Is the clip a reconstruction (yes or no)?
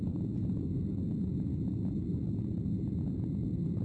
no